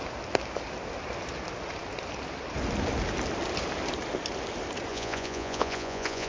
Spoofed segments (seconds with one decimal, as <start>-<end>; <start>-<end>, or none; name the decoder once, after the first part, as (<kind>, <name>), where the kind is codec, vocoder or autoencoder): 4.9-6.3 (vocoder, Vocos)